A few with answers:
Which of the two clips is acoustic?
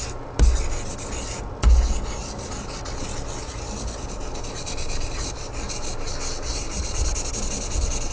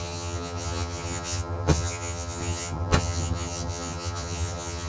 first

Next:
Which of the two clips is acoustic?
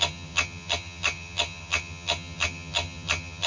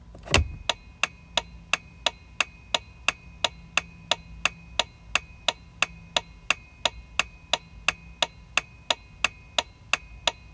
second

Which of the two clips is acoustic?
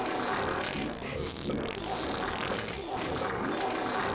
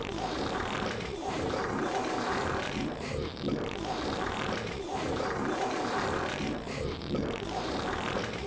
first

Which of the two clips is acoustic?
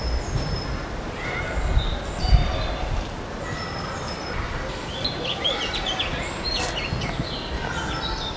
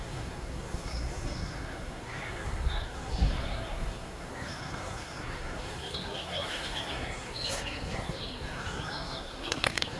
first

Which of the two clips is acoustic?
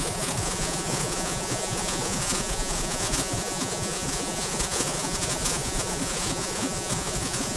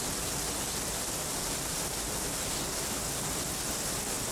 second